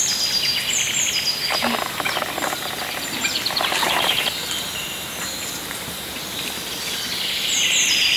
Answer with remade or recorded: recorded